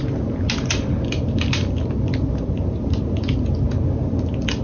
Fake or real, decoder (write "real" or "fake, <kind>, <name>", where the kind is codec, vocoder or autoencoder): real